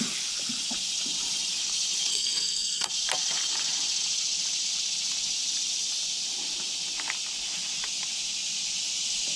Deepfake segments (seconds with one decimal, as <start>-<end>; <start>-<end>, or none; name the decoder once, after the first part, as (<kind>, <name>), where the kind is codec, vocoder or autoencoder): 2.1-2.9 (codec, SNAC)